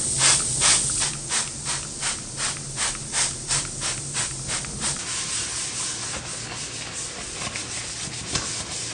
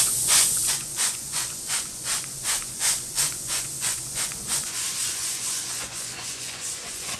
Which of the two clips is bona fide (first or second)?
first